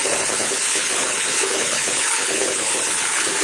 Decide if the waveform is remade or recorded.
remade